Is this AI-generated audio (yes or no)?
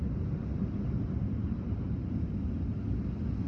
no